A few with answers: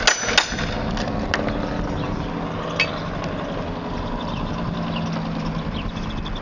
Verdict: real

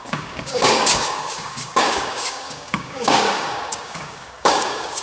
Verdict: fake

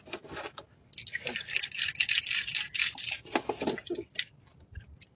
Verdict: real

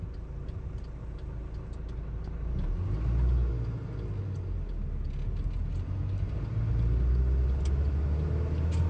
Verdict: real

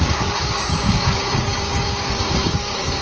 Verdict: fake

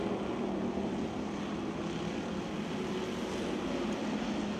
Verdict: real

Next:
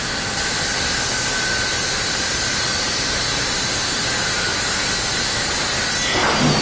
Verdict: real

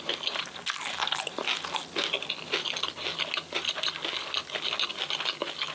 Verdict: real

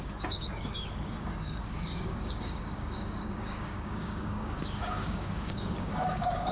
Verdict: fake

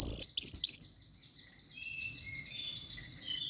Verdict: real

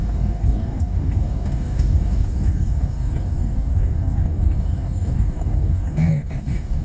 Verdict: fake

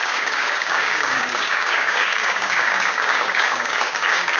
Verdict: fake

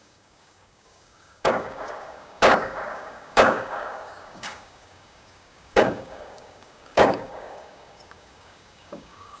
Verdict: fake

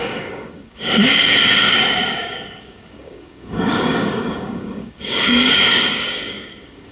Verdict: fake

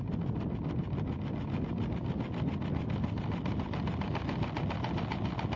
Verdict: real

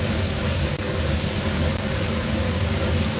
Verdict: fake